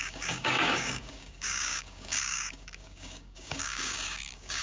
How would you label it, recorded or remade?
remade